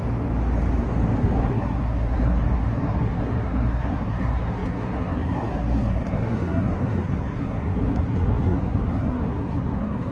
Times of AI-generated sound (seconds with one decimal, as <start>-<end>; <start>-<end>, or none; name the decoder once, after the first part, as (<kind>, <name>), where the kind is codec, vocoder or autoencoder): 1.2-10.1 (codec, SNAC)